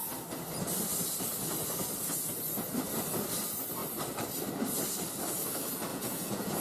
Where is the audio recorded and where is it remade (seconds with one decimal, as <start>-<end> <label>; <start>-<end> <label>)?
0.0-5.9 recorded; 5.9-6.6 remade